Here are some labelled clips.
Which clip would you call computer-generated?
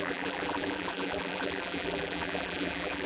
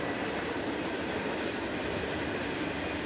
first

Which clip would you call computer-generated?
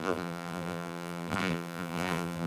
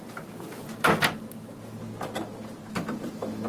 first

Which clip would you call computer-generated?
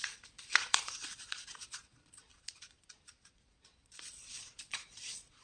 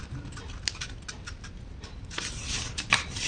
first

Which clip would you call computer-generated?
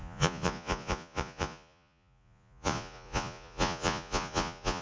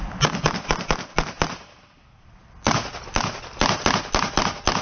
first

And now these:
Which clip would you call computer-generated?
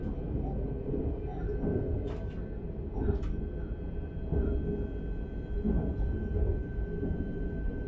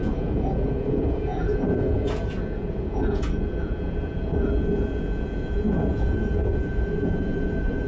second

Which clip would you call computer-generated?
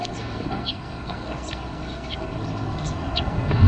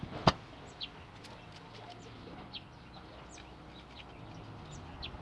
first